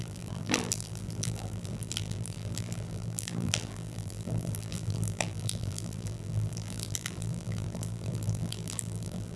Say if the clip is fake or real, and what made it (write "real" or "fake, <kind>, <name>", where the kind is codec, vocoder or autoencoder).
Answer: fake, vocoder, BigVGAN v2